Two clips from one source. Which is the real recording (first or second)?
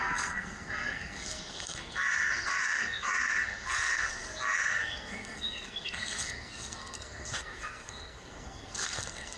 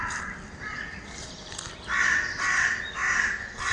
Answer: second